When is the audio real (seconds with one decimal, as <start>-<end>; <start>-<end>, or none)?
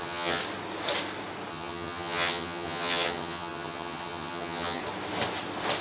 0.4-1.5; 4.8-5.8